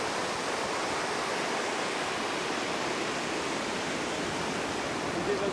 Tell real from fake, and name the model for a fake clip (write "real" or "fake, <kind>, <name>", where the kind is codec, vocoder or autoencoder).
real